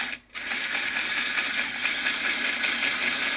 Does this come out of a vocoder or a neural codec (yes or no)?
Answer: no